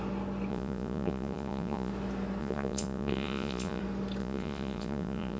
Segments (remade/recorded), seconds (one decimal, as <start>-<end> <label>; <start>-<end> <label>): 0.0-0.5 recorded; 0.5-1.9 remade; 1.9-2.4 recorded; 2.4-3.8 remade; 3.8-4.2 recorded; 4.2-5.4 remade